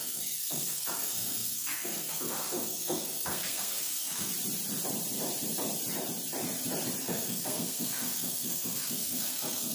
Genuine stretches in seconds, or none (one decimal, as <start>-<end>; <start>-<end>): 4.3-7.0